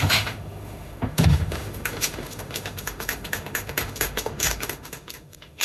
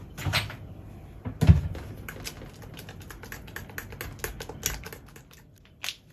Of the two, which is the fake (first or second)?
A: first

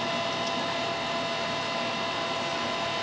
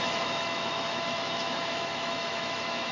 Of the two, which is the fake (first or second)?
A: second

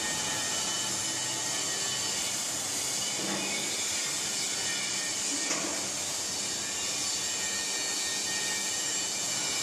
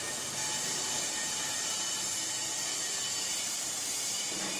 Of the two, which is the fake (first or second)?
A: second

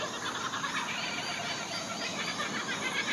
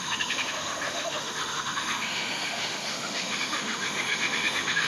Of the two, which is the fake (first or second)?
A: second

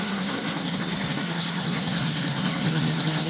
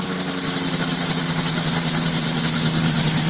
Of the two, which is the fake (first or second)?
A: first